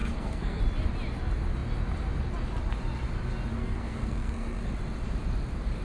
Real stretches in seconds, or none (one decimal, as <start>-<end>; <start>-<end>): 0.6-3.6; 4.7-5.8